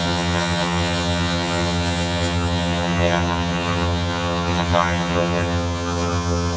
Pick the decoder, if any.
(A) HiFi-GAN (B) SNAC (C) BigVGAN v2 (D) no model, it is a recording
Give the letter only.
A